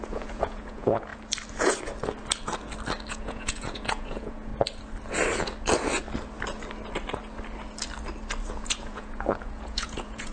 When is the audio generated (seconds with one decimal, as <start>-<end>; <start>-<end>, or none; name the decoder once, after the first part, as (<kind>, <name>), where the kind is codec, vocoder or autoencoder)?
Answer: 0.0-1.1 (vocoder, Vocos); 3.1-4.5; 8.5-10.3